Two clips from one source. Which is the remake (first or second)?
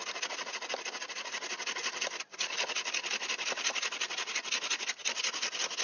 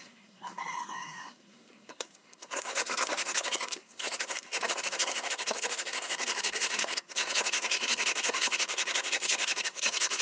second